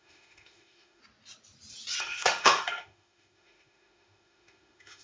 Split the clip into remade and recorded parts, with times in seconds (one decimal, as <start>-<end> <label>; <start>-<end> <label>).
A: 0.0-1.0 remade; 1.0-2.0 recorded; 2.0-5.0 remade